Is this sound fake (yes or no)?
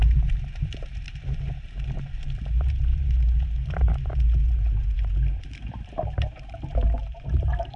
yes